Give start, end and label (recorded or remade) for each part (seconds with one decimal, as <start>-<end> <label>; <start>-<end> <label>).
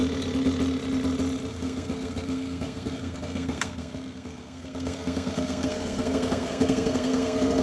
0.0-1.5 recorded; 1.5-7.6 remade